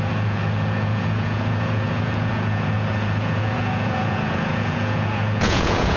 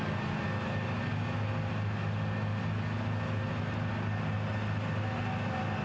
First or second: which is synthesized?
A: first